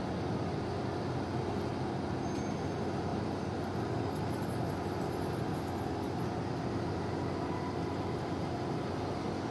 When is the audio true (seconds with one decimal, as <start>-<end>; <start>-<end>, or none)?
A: 0.0-9.5